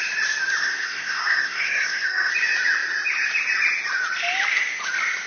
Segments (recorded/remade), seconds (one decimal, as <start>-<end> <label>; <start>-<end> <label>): 0.0-0.6 recorded; 0.6-2.3 remade; 2.3-5.3 recorded